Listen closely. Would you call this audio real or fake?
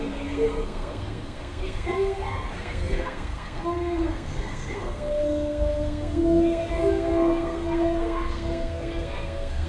fake